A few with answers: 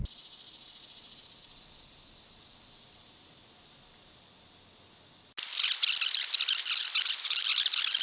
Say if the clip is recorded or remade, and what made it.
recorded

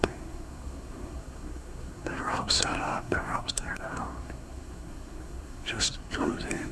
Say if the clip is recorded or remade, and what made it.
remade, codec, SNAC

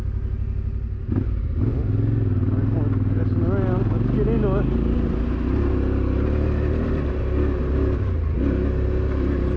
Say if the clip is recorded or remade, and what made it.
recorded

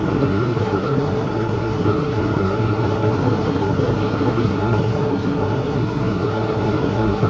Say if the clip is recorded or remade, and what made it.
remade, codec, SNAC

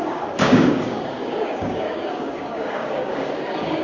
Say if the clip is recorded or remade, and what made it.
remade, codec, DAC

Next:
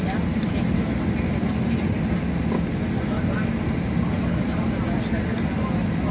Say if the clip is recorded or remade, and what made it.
recorded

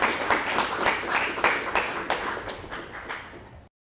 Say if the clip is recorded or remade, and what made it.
recorded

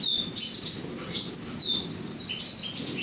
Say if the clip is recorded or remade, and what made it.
recorded